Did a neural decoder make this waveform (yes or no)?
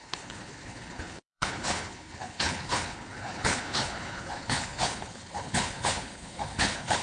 yes